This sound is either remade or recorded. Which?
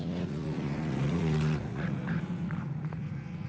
remade